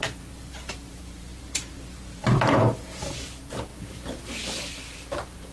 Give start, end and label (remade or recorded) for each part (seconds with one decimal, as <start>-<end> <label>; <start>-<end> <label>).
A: 0.0-5.5 remade